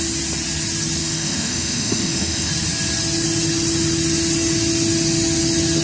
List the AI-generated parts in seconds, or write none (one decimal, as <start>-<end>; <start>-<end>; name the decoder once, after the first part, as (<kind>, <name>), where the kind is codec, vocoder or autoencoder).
1.0-2.5 (autoencoder, DAC-VAE)